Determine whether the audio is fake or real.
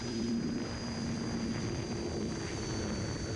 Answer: fake